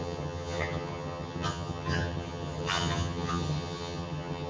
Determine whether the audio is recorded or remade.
remade